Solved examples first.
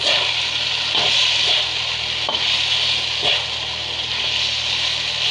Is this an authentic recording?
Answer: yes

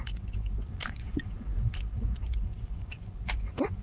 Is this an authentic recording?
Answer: no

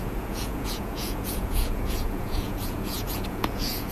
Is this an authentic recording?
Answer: no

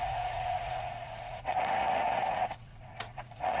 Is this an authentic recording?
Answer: no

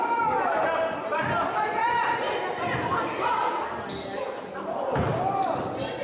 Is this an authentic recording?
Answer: yes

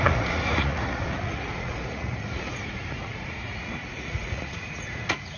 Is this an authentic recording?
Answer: no